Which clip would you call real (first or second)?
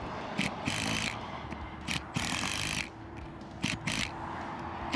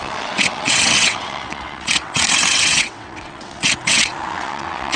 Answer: first